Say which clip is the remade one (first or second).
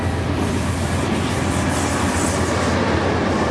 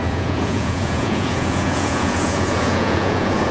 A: second